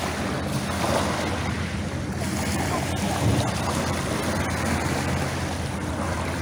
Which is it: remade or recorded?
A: recorded